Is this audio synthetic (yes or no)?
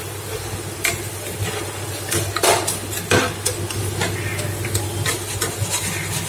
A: no